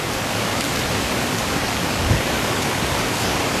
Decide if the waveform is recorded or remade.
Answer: remade